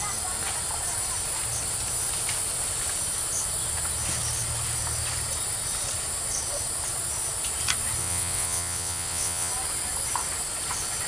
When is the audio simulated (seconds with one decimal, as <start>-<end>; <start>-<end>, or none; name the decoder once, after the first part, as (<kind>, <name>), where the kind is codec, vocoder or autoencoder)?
8.0-9.5 (vocoder, WaveNeXt)